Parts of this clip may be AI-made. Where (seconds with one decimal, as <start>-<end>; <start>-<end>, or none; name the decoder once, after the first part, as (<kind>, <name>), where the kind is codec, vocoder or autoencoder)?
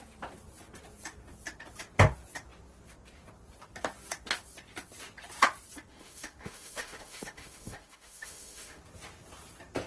5.9-8.8 (autoencoder, DAC-VAE)